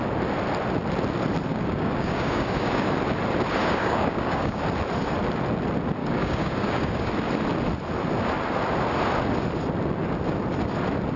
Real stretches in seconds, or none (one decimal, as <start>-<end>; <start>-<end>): 0.0-1.5; 3.0-3.6; 4.6-6.0; 7.1-11.2